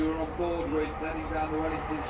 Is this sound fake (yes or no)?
no